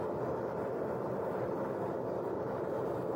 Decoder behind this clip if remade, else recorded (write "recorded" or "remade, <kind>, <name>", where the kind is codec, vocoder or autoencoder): recorded